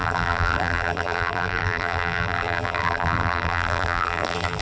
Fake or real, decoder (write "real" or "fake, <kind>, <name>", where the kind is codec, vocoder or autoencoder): fake, vocoder, BigVGAN v2